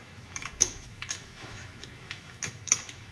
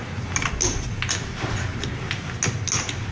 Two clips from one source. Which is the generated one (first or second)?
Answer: first